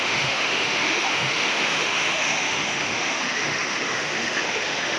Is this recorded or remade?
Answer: remade